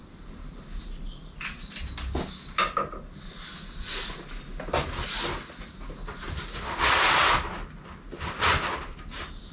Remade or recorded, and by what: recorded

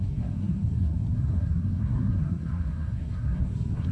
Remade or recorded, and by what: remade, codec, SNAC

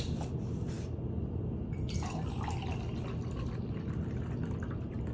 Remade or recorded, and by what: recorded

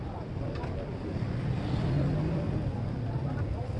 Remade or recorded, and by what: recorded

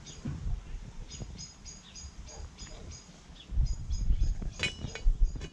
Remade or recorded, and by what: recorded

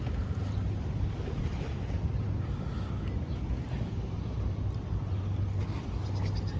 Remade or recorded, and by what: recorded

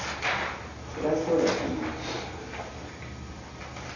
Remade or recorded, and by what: recorded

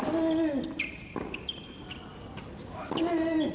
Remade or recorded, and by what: recorded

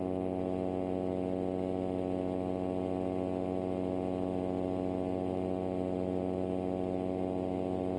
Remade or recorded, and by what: recorded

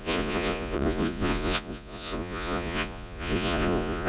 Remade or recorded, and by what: remade, vocoder, Vocos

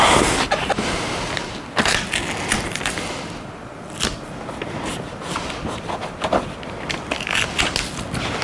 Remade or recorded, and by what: recorded